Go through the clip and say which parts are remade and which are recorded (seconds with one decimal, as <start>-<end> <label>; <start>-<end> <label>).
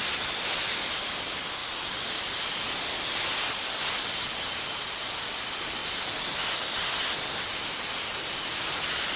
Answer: 0.0-9.2 recorded